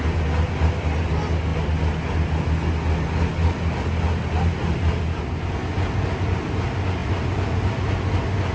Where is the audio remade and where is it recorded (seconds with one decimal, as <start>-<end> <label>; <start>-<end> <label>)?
0.0-7.0 recorded; 7.0-7.7 remade; 7.7-8.5 recorded